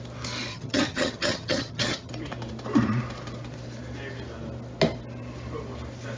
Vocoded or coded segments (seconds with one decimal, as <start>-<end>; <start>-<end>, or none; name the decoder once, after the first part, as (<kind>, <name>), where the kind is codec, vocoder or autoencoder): 0.5-2.1 (vocoder, HiFi-GAN)